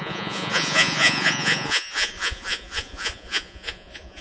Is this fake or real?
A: fake